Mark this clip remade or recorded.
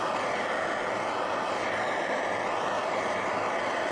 recorded